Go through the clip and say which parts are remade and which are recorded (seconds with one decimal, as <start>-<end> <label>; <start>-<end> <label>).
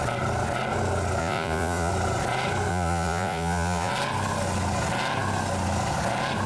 0.0-1.2 recorded; 1.2-1.9 remade; 1.9-2.7 recorded; 2.7-3.9 remade; 3.9-6.5 recorded